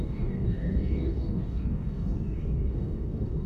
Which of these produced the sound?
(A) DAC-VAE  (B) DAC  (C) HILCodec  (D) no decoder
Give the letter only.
B